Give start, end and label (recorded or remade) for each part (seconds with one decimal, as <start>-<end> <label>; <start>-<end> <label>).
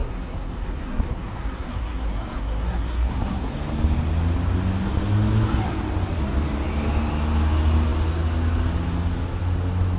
0.0-3.5 remade; 3.5-10.0 recorded